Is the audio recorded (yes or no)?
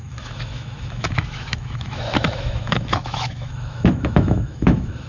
no